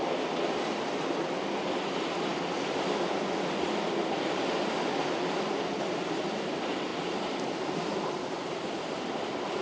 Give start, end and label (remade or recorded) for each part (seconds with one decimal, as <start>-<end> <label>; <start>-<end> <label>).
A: 0.0-9.6 recorded